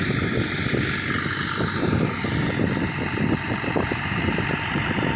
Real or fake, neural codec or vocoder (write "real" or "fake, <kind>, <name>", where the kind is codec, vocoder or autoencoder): real